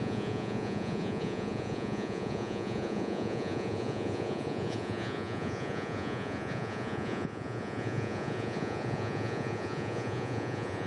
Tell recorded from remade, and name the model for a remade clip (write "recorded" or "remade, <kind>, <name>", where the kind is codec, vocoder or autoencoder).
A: remade, vocoder, Vocos